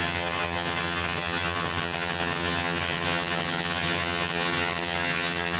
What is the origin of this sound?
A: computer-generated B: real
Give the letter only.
A